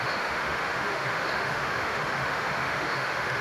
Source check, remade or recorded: remade